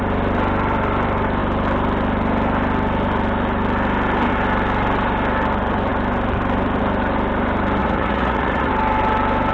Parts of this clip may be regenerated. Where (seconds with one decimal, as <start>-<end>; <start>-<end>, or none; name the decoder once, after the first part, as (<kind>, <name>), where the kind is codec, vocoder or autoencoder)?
7.8-8.7 (vocoder, Vocos)